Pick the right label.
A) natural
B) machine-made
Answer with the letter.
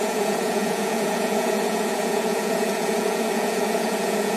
B